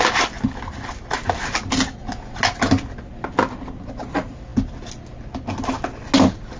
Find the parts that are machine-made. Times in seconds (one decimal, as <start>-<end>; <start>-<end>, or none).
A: none